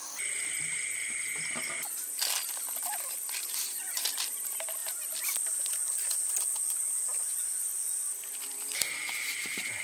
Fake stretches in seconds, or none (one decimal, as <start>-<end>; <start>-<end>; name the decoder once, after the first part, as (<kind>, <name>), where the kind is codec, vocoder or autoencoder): none